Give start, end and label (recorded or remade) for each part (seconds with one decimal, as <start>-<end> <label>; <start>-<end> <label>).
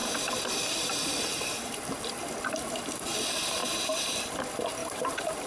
0.0-1.8 remade; 1.8-4.8 recorded; 4.8-5.5 remade